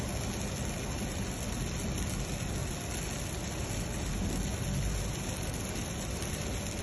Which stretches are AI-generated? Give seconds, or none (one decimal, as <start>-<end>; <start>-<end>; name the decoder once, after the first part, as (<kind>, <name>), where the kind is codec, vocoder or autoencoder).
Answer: none